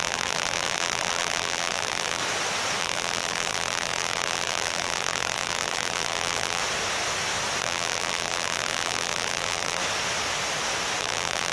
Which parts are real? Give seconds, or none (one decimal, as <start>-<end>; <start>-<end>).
2.2-2.8; 6.6-7.6; 9.8-11.0